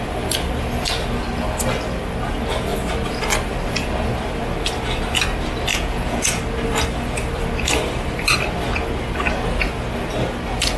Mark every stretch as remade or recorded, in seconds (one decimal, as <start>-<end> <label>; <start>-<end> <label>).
0.0-5.7 recorded; 5.7-6.4 remade; 6.4-10.8 recorded